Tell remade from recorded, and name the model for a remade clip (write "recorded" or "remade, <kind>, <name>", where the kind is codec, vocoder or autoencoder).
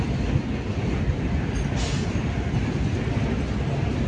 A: recorded